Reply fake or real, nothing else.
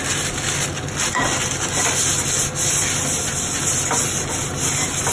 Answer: real